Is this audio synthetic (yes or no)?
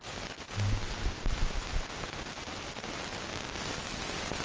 no